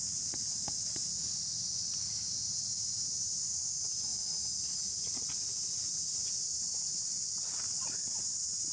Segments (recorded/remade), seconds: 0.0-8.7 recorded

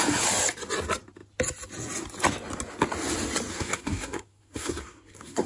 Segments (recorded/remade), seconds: 0.0-3.5 recorded; 3.5-5.5 remade